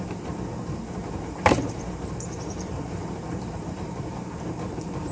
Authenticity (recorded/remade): remade